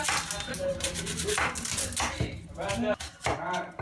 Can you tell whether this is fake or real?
real